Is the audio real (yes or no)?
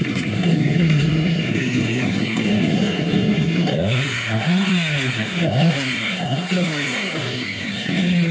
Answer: no